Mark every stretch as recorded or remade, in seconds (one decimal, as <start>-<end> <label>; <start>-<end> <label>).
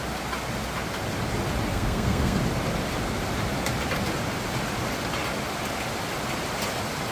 0.0-1.7 recorded; 1.7-2.4 remade; 2.4-7.1 recorded